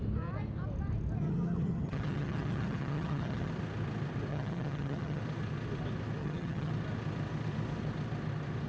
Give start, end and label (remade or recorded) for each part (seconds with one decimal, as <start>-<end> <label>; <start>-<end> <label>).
0.0-1.2 recorded; 1.2-3.5 remade; 3.5-4.3 recorded; 4.3-5.2 remade; 5.2-6.2 recorded; 6.2-6.7 remade; 6.7-8.7 recorded